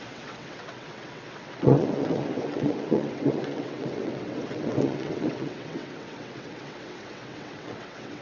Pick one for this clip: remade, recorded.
remade